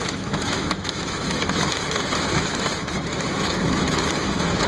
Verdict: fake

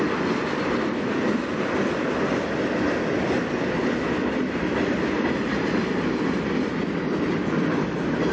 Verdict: real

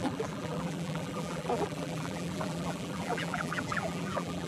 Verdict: fake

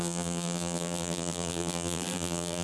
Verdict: fake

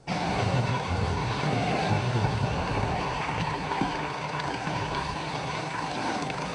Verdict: fake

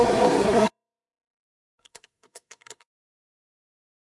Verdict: fake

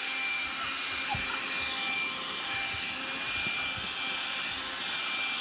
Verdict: real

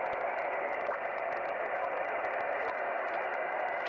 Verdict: real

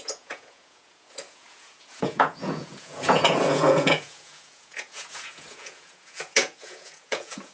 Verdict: fake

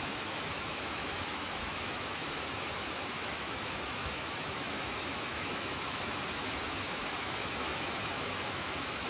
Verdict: fake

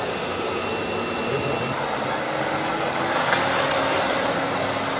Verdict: real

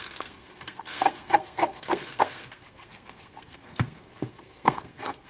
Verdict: fake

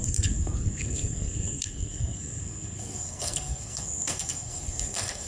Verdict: fake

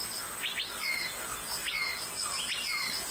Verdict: real